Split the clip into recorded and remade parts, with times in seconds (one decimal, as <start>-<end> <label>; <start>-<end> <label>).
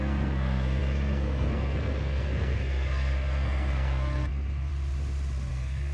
0.0-4.7 remade; 4.7-5.5 recorded; 5.5-5.9 remade